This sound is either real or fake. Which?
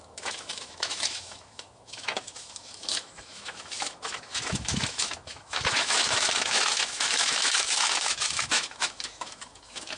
fake